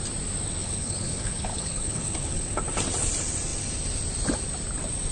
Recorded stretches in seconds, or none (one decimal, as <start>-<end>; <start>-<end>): 0.0-0.6; 2.6-5.1